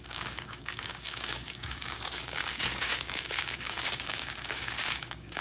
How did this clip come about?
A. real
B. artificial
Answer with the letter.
B